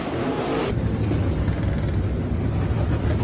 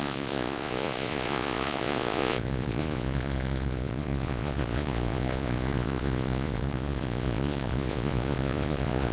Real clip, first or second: first